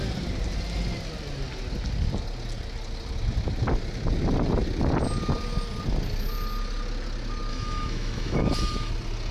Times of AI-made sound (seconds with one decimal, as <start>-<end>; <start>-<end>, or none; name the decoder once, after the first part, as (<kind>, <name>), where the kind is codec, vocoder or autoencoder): 7.5-8.9 (autoencoder, DAC-VAE)

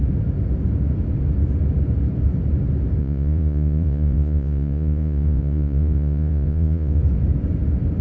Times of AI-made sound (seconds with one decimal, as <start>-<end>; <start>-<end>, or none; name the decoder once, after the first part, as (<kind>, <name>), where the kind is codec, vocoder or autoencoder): 3.0-7.0 (vocoder, Vocos)

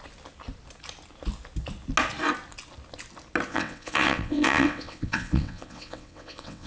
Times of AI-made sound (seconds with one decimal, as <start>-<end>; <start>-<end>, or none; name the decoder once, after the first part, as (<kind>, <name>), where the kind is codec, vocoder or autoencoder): 3.5-6.7 (vocoder, WaveNeXt)

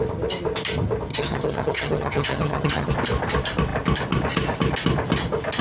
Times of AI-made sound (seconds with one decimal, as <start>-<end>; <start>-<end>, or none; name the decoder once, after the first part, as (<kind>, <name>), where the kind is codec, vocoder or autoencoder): 1.1-2.9 (vocoder, HiFi-GAN)

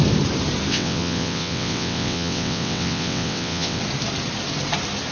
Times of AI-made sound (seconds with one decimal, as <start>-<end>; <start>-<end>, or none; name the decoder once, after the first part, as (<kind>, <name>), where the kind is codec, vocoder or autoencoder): 0.7-3.8 (vocoder, WaveNeXt)

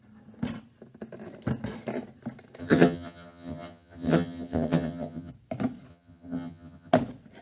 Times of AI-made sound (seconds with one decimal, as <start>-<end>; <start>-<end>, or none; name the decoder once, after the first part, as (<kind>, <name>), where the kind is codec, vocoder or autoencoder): 2.6-5.3 (vocoder, HiFi-GAN); 5.9-6.9